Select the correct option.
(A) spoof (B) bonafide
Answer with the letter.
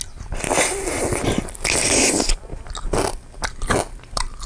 B